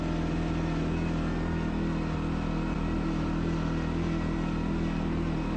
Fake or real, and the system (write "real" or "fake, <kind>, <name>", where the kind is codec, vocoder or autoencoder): real